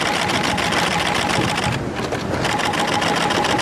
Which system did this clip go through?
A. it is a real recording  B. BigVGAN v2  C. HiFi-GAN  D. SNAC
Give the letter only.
A